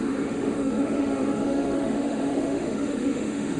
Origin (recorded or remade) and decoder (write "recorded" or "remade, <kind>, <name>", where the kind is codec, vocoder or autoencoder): remade, autoencoder, DAC-VAE